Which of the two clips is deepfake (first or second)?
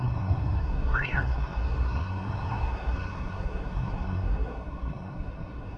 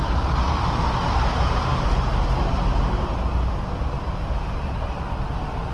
first